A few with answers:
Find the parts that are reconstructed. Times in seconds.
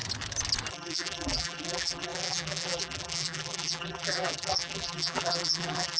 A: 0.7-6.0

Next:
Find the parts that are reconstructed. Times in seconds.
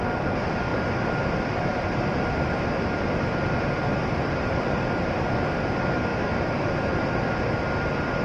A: 0.7-5.6; 6.1-7.0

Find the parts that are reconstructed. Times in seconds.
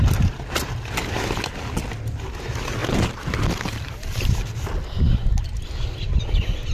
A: 2.8-4.8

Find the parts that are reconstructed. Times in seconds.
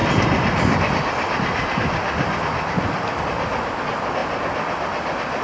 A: 0.0-3.2; 4.2-5.4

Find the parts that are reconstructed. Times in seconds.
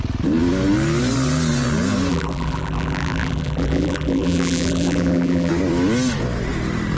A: 2.1-5.5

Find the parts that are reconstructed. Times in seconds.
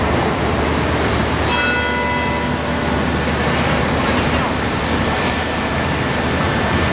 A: 0.0-0.7; 3.8-6.9